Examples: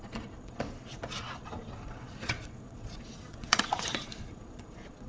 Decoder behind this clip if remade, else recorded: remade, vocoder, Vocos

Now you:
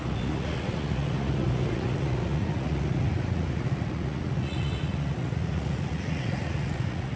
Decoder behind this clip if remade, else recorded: remade, vocoder, Vocos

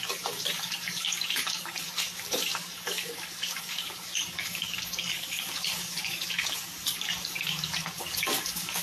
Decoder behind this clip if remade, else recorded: remade, codec, DAC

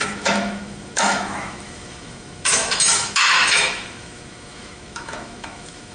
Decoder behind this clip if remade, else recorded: remade, autoencoder, DAC-VAE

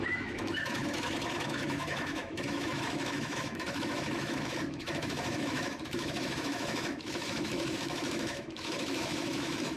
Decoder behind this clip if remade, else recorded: remade, autoencoder, DAC-VAE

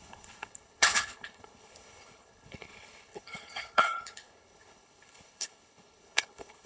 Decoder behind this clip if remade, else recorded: remade, codec, HILCodec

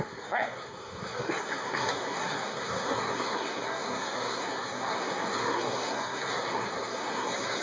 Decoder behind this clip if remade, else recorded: remade, codec, SNAC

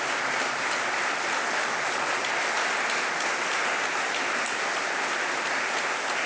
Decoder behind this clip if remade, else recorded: recorded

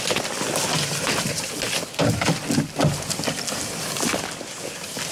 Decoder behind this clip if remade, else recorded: recorded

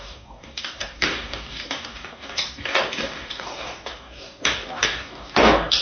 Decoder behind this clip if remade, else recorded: remade, codec, DAC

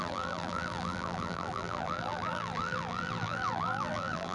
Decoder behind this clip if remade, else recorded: remade, vocoder, BigVGAN v2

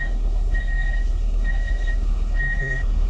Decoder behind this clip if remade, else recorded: remade, codec, SNAC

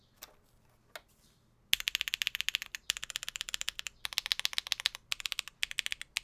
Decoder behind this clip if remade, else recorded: recorded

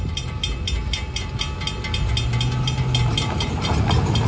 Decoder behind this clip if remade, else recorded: recorded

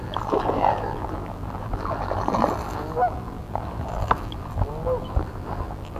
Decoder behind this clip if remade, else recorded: remade, vocoder, BigVGAN v2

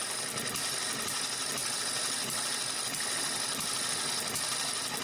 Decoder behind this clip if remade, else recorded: recorded